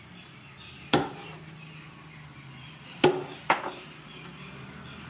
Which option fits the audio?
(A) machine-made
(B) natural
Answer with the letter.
B